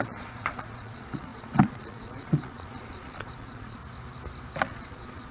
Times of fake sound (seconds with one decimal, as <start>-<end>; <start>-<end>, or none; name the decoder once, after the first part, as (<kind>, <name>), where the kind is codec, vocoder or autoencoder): 0.0-3.8 (vocoder, Vocos); 4.6-5.3

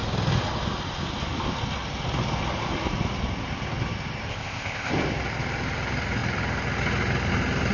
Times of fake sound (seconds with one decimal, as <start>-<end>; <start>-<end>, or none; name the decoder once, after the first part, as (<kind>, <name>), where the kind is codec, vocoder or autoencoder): 4.3-4.9 (codec, ZipCodec)

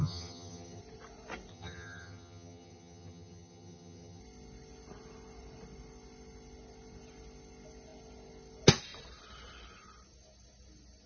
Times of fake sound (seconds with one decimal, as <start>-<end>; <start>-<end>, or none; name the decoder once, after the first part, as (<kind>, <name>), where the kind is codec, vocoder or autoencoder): 0.0-0.8 (vocoder, HiFi-GAN); 1.5-4.2

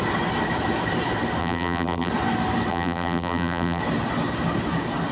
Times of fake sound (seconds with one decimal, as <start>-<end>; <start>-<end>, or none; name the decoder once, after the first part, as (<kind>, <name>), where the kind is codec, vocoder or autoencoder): 1.4-2.1 (vocoder, BigVGAN v2); 2.7-3.8

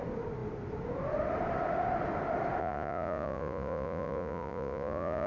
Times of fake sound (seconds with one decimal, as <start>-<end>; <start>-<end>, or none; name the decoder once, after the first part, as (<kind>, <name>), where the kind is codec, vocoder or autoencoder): 2.6-5.3 (vocoder, Vocos)

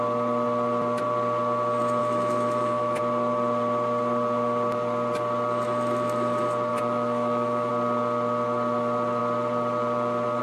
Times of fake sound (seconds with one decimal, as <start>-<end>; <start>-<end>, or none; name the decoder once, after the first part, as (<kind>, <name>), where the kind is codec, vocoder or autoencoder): 2.0-3.0 (autoencoder, DAC-VAE); 6.7-7.7